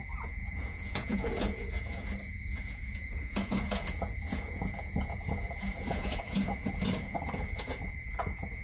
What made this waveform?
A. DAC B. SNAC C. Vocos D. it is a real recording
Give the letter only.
C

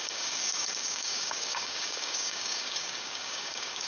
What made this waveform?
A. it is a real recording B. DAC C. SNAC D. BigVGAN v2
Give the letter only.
B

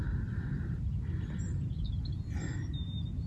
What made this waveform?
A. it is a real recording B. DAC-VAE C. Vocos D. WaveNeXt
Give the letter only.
A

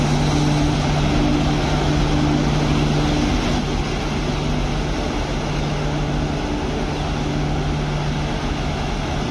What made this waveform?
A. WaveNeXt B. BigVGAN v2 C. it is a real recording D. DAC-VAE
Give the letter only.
C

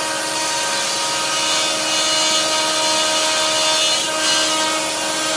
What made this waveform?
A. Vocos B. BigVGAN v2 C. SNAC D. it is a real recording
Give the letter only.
D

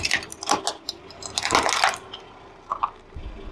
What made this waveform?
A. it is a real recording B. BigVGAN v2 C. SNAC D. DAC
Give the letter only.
A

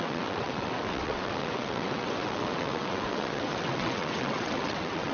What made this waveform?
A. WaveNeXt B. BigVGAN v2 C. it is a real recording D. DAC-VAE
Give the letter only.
A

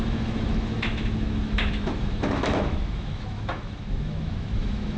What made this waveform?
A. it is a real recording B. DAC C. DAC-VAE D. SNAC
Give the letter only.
C